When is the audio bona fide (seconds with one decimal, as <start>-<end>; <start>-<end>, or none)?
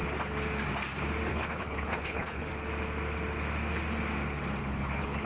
0.0-1.3; 2.5-4.6